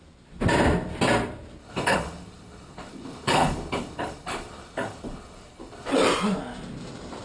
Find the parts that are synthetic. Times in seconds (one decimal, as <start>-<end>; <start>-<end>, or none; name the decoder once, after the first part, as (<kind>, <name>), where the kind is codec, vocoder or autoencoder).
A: 1.6-5.9 (codec, HILCodec)